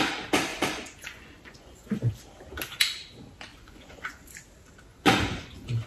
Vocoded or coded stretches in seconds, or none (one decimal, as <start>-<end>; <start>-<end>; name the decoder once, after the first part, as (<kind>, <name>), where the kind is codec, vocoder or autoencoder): 0.5-2.2 (vocoder, Vocos); 3.5-4.3; 4.9-5.9